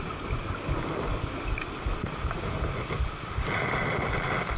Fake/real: real